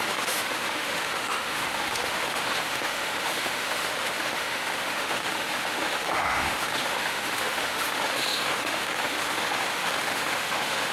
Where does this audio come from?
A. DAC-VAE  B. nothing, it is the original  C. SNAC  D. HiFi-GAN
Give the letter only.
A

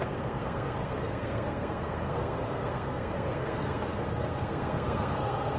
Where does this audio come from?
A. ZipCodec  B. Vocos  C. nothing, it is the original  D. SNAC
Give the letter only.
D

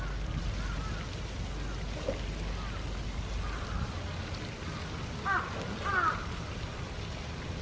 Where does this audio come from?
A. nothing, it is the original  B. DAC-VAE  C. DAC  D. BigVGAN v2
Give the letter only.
A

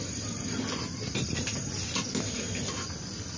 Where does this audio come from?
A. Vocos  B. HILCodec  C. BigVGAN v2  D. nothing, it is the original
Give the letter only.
D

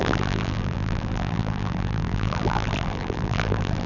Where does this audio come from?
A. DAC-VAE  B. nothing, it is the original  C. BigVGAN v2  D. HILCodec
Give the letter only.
C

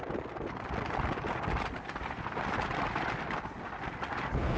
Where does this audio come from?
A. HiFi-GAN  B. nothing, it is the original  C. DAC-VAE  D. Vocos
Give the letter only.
B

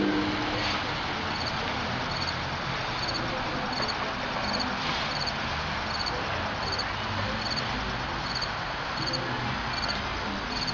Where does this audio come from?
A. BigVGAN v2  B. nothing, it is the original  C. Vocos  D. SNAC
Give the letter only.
B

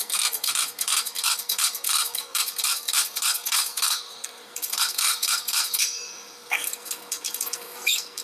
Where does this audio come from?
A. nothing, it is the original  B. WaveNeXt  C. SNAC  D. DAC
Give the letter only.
C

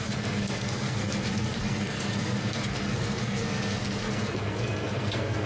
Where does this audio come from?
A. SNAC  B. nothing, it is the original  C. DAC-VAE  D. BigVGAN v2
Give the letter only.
A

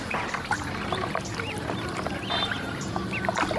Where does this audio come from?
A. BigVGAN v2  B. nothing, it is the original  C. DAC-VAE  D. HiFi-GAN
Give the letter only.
B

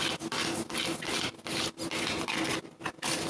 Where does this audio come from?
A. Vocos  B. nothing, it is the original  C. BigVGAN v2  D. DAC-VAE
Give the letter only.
B